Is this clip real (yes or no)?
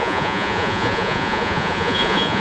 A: no